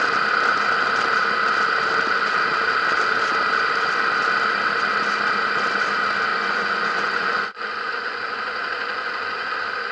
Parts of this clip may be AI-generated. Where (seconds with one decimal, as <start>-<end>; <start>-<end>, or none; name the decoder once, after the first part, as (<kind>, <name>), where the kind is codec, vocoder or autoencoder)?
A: 6.3-9.5 (vocoder, Vocos)